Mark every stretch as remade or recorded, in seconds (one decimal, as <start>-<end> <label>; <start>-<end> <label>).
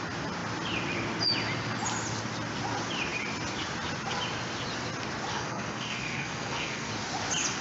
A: 0.0-5.3 recorded; 5.3-6.9 remade; 6.9-7.6 recorded